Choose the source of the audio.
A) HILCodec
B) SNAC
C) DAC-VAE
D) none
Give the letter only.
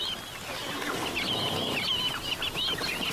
D